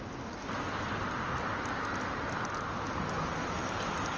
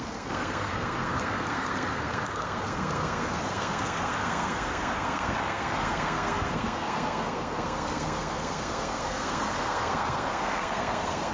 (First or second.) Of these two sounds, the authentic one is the first